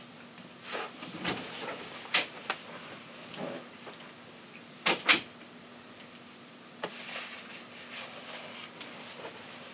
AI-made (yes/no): no